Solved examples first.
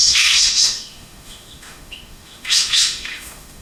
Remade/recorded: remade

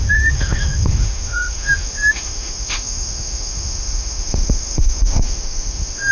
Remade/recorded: remade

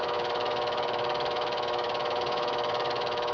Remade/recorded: remade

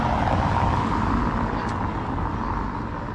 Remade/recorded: recorded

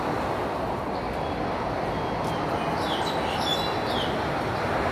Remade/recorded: recorded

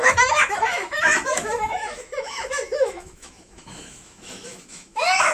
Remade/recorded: remade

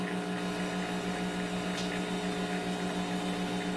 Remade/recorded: recorded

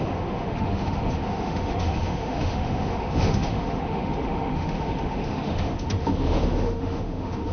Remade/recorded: remade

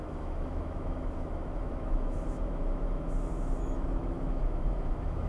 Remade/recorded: remade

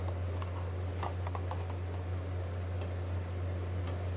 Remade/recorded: recorded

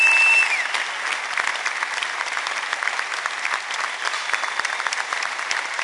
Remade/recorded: recorded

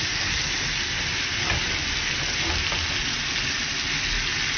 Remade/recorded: recorded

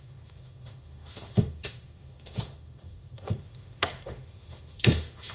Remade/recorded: remade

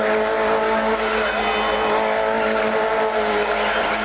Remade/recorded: recorded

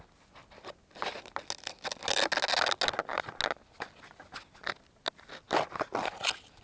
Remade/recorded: recorded